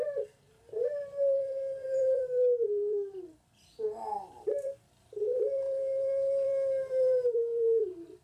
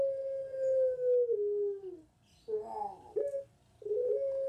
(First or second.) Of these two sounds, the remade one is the first